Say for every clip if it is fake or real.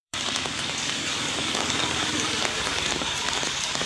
fake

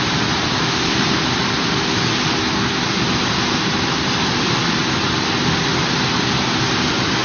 real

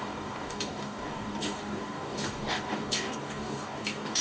fake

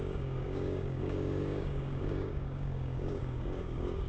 fake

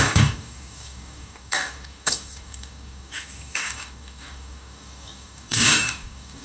fake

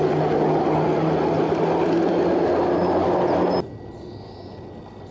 real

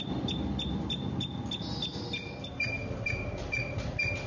real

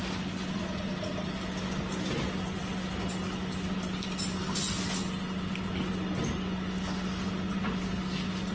real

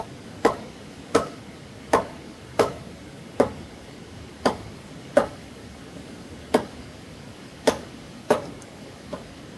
fake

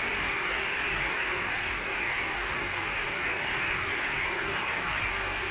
fake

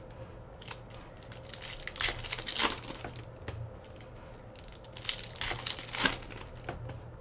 real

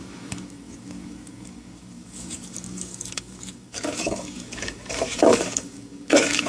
fake